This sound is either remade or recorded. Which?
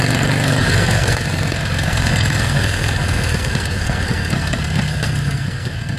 remade